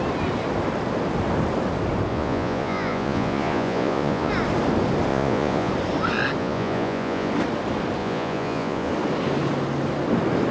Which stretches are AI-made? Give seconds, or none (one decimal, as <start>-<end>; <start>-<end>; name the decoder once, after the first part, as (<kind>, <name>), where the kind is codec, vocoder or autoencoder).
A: 2.1-4.3 (vocoder, Vocos); 5.1-5.7; 6.4-7.3; 8.0-8.9